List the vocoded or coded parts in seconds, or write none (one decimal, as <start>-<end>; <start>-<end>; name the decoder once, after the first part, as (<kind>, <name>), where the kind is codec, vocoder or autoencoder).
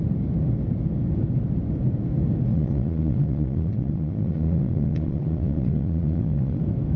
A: 2.5-6.6 (vocoder, Vocos)